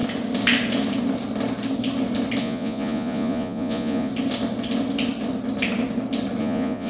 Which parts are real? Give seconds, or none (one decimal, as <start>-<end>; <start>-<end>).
0.0-2.4; 4.1-6.4